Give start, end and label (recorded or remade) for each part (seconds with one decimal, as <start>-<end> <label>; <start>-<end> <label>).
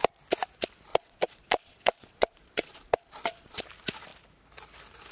0.0-0.9 recorded; 0.9-3.6 remade; 3.6-5.1 recorded